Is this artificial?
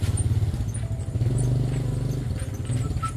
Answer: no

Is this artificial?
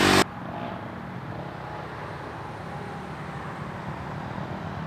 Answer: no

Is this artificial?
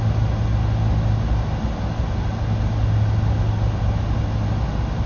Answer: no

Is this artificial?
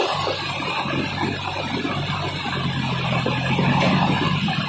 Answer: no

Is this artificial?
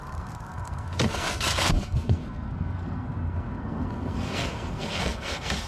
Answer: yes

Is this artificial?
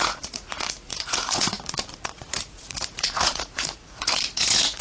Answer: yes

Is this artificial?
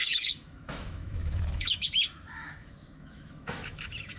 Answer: yes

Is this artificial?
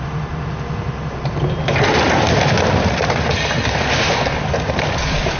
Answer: no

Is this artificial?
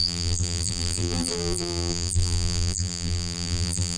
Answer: yes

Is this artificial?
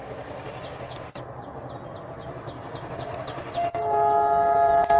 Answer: no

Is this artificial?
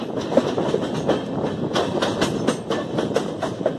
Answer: no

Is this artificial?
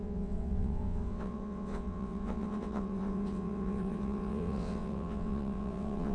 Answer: yes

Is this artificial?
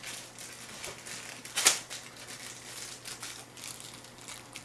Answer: no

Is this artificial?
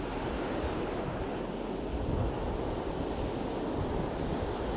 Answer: no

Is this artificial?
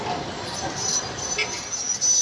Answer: no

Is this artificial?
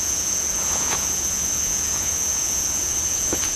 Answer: yes